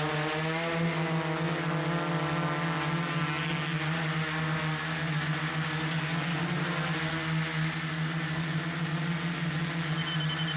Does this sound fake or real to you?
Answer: real